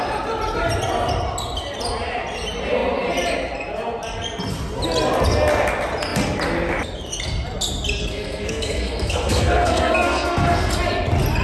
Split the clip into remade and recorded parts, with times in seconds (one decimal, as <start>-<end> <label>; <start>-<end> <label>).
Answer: 0.0-8.0 recorded; 8.0-10.7 remade; 10.7-11.4 recorded